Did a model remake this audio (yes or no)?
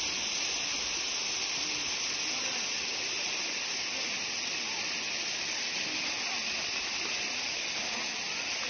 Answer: no